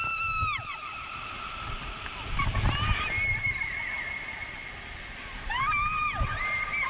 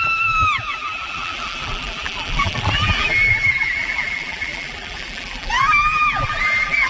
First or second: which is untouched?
first